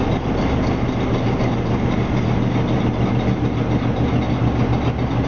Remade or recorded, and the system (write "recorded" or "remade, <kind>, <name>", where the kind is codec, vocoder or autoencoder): recorded